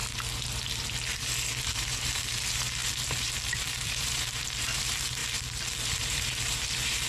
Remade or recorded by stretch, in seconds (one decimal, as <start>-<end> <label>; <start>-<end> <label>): 0.0-1.6 recorded; 1.6-5.2 remade; 5.2-6.0 recorded; 6.0-7.1 remade